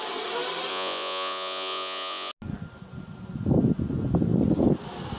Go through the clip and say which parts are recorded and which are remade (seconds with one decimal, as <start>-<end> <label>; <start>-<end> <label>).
0.0-0.7 recorded; 0.7-2.3 remade; 2.3-5.2 recorded